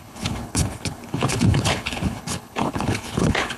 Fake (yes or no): yes